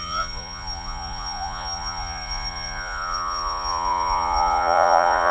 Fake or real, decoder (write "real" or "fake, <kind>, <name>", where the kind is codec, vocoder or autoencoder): fake, vocoder, Vocos